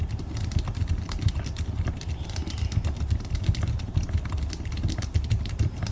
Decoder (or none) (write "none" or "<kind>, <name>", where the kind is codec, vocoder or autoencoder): none